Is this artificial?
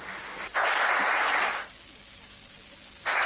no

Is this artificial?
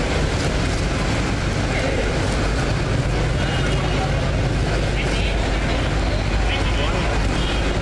no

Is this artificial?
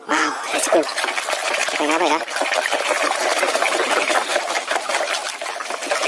no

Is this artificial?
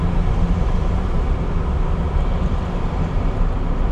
no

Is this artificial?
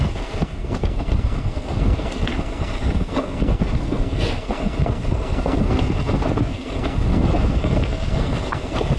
yes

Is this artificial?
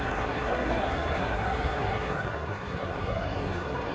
yes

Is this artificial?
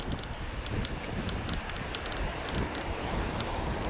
no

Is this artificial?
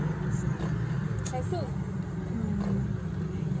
no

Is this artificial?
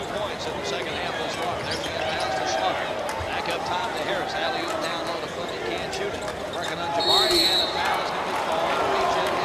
no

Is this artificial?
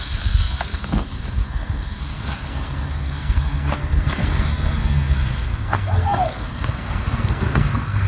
yes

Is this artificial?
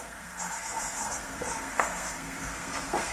yes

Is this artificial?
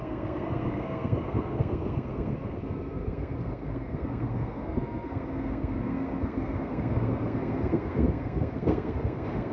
yes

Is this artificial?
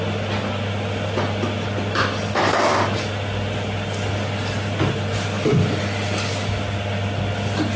no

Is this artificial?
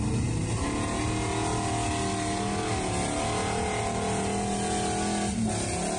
no